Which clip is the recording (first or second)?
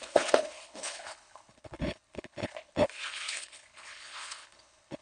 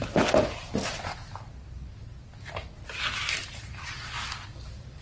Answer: second